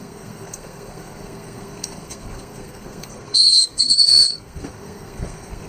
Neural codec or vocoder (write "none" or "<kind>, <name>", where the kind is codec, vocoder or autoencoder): codec, SNAC